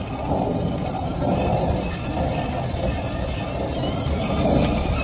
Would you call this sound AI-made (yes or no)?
no